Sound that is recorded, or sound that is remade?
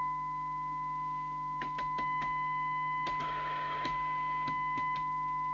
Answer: remade